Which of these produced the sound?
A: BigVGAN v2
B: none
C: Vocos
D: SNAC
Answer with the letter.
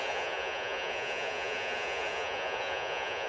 C